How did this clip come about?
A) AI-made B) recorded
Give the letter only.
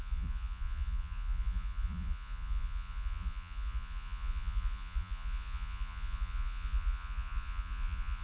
A